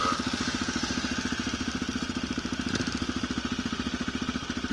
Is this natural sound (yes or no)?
yes